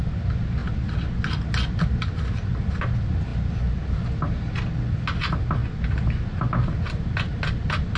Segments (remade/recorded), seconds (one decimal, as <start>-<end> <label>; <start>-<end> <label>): 0.0-8.0 recorded